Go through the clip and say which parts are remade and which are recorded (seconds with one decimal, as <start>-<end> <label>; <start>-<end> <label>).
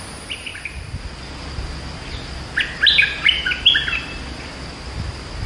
0.0-5.5 recorded